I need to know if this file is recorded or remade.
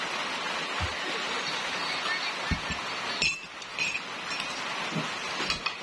recorded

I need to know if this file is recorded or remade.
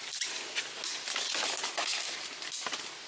recorded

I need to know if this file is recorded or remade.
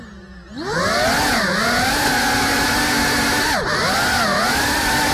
recorded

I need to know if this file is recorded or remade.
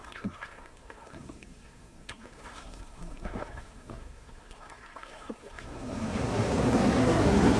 remade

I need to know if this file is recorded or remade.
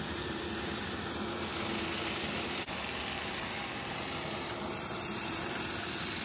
recorded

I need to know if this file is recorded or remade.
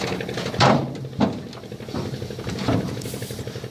recorded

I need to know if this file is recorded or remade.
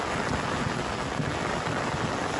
recorded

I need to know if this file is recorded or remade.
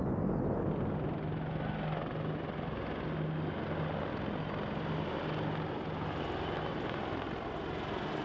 recorded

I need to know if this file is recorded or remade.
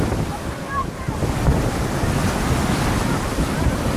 recorded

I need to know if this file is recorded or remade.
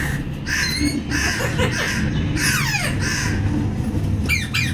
recorded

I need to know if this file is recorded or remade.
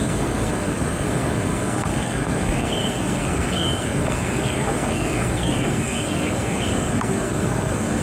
remade